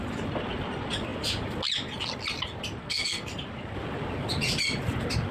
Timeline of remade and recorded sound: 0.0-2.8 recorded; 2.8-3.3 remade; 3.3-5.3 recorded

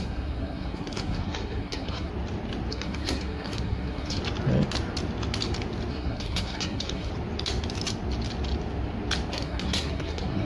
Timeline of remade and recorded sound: 0.0-2.1 remade; 2.1-2.7 recorded; 2.7-4.2 remade; 4.2-5.9 recorded; 5.9-7.1 remade; 7.1-9.3 recorded; 9.3-10.5 remade

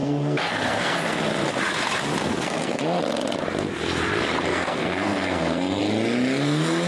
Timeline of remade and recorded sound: 0.0-1.2 remade; 1.2-2.2 recorded; 2.2-2.8 remade; 2.8-4.5 recorded; 4.5-5.8 remade; 5.8-6.9 recorded

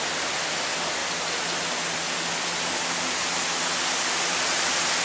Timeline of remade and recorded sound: 0.0-5.0 recorded

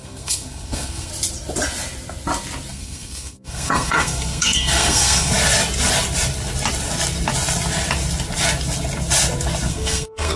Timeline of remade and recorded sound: 0.0-1.1 remade; 1.1-2.7 recorded; 2.7-5.3 remade; 5.3-9.7 recorded; 9.7-10.4 remade